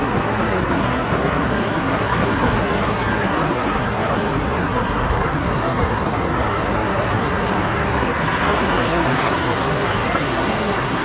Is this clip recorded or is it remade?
remade